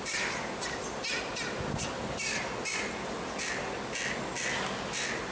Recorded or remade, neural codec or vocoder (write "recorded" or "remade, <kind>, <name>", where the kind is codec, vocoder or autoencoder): recorded